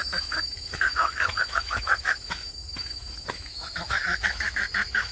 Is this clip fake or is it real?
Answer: fake